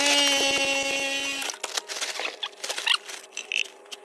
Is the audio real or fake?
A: real